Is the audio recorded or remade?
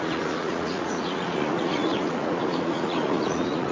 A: remade